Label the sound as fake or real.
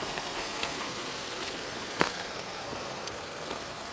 fake